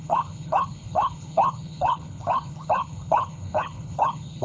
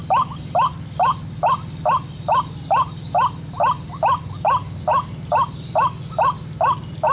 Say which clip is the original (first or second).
second